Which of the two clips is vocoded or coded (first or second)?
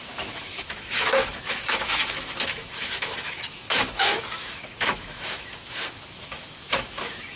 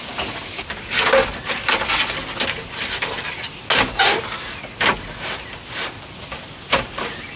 first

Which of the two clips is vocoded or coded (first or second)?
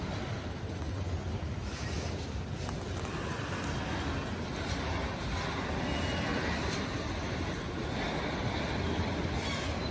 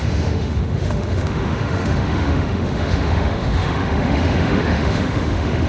second